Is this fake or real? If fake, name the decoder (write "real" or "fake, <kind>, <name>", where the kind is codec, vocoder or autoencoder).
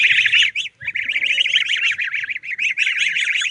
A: real